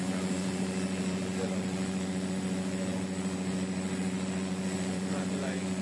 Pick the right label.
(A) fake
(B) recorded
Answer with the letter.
A